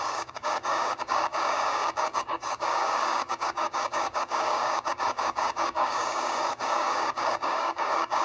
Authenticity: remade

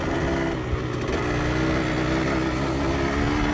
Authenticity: recorded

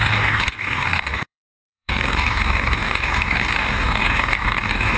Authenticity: remade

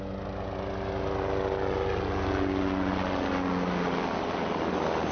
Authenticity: recorded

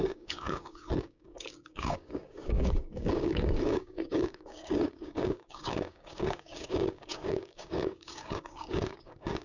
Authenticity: remade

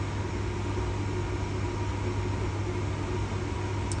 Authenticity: recorded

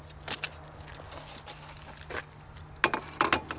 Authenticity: recorded